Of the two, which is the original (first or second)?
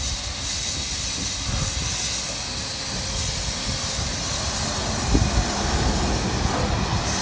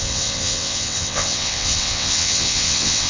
first